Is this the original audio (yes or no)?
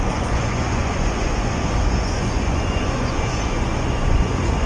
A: no